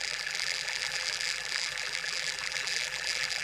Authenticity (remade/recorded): remade